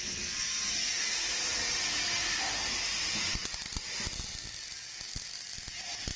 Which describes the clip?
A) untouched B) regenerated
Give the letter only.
A